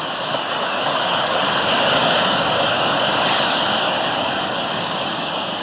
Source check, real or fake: fake